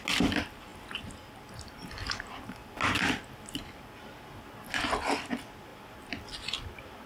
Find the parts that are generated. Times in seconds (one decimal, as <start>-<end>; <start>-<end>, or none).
none